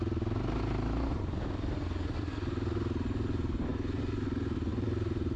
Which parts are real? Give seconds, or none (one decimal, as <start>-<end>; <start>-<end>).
0.0-1.1; 2.2-4.7